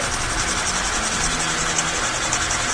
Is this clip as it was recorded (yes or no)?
yes